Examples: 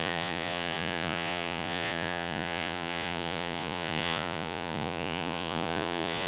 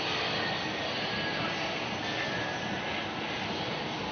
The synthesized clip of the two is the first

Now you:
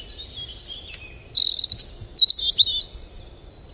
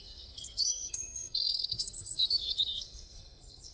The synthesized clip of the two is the second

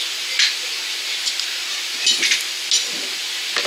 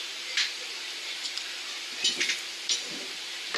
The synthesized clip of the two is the second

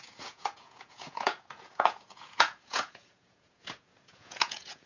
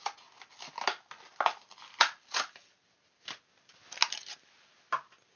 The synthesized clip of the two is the first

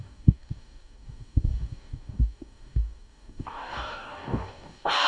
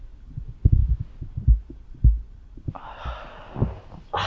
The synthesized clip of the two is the first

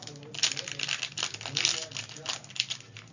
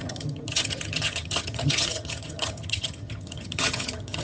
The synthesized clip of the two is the second